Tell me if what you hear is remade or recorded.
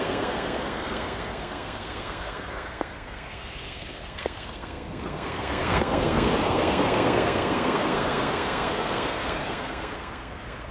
remade